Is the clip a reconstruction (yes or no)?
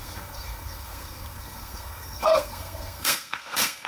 yes